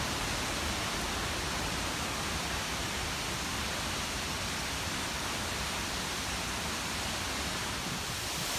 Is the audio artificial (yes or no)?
no